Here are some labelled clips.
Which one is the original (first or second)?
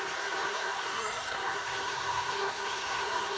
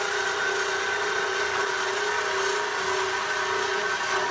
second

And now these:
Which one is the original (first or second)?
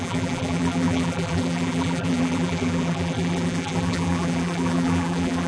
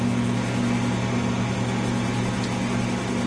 second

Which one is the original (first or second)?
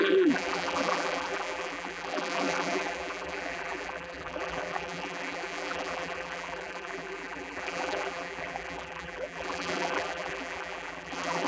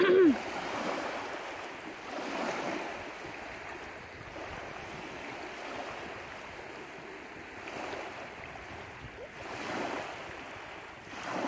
second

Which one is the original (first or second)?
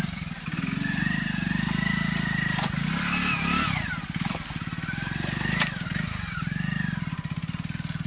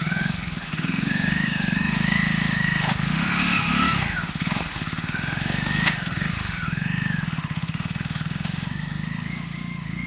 first